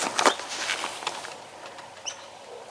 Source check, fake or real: fake